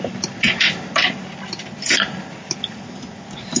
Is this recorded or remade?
recorded